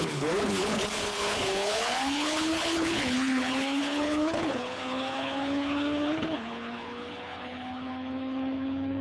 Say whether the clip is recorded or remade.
remade